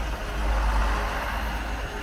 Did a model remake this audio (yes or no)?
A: no